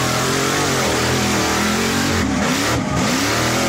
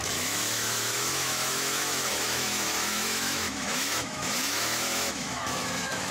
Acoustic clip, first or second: first